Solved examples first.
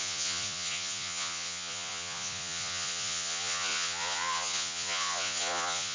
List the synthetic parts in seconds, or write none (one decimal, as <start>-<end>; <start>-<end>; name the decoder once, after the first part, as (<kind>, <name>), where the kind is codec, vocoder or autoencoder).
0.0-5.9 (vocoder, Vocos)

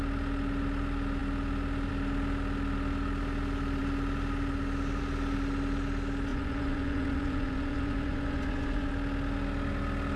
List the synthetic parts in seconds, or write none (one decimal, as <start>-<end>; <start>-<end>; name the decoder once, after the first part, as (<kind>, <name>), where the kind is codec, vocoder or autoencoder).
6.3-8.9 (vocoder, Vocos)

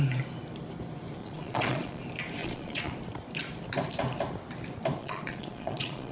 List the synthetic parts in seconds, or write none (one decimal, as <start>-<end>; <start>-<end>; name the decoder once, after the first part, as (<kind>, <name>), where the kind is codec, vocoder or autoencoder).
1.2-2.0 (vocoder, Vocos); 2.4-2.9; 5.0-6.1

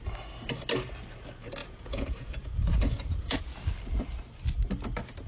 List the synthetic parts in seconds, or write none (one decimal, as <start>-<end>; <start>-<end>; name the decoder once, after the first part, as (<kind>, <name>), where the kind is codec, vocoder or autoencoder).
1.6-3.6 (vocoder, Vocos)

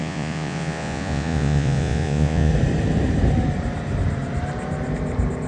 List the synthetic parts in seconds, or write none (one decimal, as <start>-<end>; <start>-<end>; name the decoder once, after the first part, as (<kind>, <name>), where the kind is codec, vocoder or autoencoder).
0.0-2.5 (vocoder, Vocos)

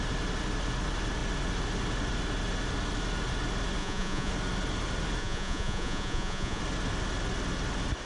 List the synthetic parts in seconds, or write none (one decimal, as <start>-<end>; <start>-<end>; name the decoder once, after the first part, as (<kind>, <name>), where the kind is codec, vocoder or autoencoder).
3.8-4.3 (vocoder, Vocos); 5.2-6.6

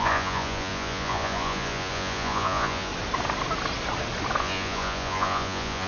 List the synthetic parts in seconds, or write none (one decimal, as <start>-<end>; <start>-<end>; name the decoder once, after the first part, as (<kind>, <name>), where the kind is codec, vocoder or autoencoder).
0.0-2.9 (vocoder, Vocos); 4.4-5.9

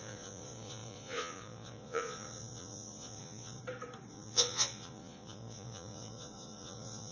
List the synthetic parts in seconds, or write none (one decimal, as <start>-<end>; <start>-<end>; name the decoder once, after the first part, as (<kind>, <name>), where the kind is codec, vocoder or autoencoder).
0.0-3.6 (vocoder, Vocos); 4.1-7.1